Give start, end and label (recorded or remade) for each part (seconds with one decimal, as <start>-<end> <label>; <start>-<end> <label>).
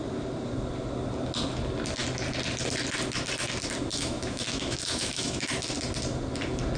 0.0-3.9 recorded; 3.9-5.5 remade; 5.5-6.8 recorded